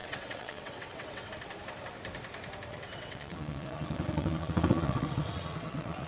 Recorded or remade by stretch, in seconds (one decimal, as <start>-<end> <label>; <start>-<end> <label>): 0.0-1.3 remade; 1.3-2.7 recorded; 2.7-6.1 remade